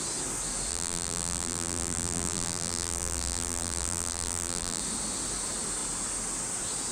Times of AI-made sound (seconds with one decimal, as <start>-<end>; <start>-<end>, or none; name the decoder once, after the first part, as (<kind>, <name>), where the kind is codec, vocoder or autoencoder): 0.7-4.8 (vocoder, BigVGAN v2)